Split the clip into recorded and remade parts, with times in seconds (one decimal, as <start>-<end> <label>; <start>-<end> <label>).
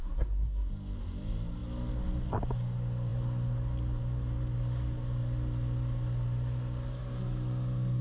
0.0-0.7 remade; 0.7-8.0 recorded